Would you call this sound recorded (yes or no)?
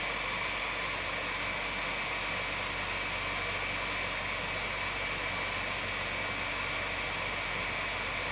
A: yes